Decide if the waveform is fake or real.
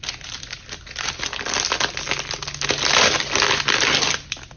real